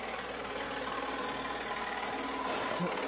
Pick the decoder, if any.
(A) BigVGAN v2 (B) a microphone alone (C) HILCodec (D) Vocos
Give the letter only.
B